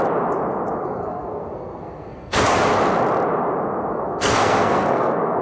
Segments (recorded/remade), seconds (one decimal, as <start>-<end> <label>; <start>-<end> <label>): 0.0-0.8 recorded; 0.8-2.4 remade; 2.4-3.9 recorded; 3.9-5.4 remade